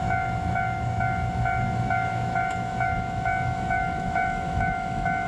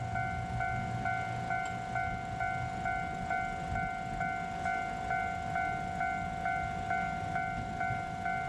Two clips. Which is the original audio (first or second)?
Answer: second